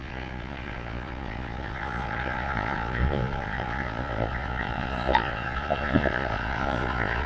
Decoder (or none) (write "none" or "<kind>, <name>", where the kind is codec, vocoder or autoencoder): vocoder, Vocos